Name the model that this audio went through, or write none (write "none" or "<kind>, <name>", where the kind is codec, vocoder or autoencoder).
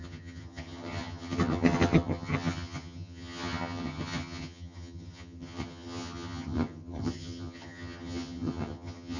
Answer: vocoder, HiFi-GAN